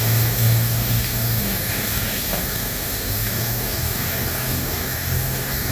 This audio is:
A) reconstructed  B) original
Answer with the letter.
A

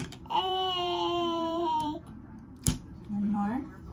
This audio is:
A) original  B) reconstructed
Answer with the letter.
B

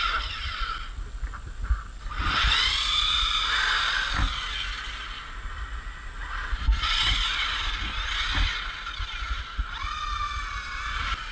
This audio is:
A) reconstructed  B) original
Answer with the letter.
B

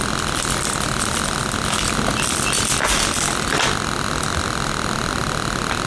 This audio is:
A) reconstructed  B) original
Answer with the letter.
B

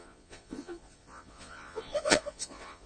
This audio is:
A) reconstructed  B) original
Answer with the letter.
A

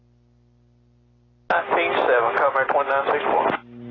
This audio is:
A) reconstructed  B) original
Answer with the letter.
B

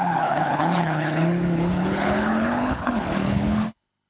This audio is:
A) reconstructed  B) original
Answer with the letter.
A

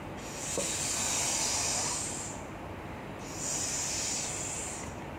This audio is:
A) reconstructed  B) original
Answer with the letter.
B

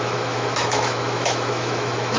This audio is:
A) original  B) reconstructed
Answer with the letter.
B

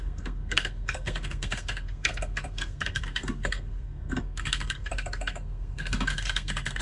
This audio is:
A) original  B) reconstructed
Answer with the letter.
B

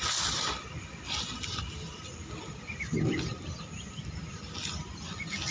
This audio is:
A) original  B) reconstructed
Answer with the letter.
A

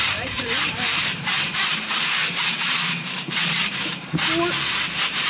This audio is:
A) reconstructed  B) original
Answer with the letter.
A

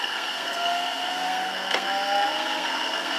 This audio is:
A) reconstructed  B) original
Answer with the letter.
A